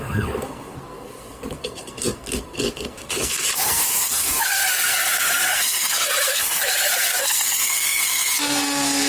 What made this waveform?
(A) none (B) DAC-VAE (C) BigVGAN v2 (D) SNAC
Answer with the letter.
D